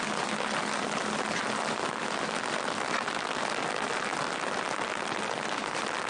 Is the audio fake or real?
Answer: real